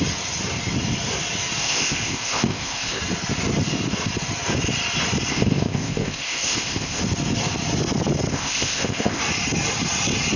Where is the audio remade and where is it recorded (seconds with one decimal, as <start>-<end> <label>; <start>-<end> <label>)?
0.0-1.6 recorded; 1.6-3.0 remade; 3.0-5.3 recorded; 5.3-7.0 remade; 7.0-8.3 recorded; 8.3-9.2 remade; 9.2-10.4 recorded

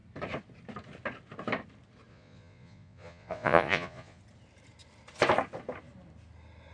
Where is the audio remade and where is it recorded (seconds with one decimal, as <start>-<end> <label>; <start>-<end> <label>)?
0.0-2.1 recorded; 2.1-4.2 remade; 4.2-6.7 recorded

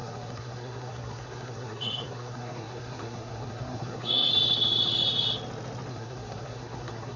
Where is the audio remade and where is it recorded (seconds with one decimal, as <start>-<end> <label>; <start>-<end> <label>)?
0.0-4.3 remade; 4.3-5.9 recorded; 5.9-7.2 remade

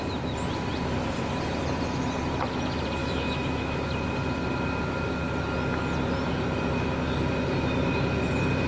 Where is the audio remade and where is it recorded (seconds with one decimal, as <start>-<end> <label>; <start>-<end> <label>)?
0.0-3.0 recorded; 3.0-3.9 remade; 3.9-8.7 recorded

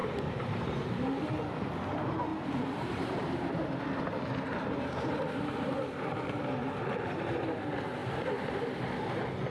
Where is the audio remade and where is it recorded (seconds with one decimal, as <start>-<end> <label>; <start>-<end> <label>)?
0.0-0.8 remade; 0.8-2.3 recorded; 2.3-3.5 remade; 3.5-4.5 recorded; 4.5-5.2 remade; 5.2-9.5 recorded